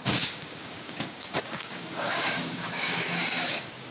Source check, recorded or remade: remade